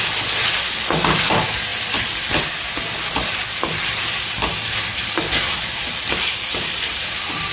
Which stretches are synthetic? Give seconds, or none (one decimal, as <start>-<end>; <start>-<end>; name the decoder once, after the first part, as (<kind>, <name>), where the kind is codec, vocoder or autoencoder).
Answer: none